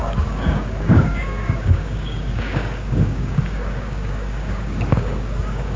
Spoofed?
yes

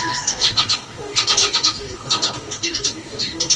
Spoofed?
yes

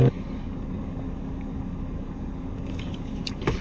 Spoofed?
yes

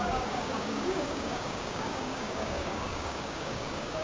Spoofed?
yes